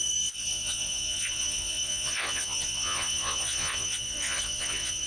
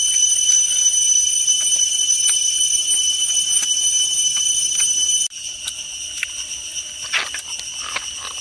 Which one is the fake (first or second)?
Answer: first